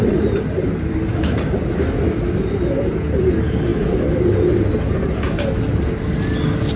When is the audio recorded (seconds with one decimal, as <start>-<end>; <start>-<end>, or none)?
0.0-6.8